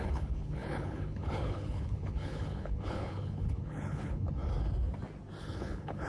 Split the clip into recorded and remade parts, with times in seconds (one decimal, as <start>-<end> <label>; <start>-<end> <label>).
0.0-4.4 remade; 4.4-5.4 recorded; 5.4-6.1 remade